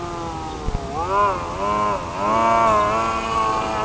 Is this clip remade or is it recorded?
recorded